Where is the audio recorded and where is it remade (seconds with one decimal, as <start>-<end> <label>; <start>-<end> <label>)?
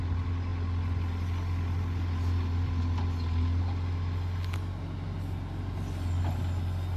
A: 0.0-7.0 recorded